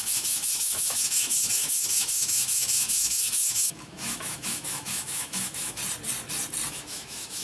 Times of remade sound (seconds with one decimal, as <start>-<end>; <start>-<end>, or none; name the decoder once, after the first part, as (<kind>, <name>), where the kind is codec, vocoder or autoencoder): 0.0-5.8 (autoencoder, DAC-VAE); 6.7-7.4